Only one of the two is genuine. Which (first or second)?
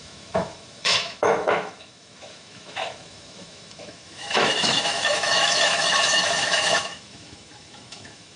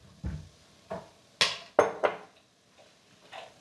second